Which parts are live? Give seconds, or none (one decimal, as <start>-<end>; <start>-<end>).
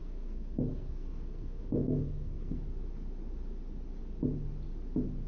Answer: 2.6-5.3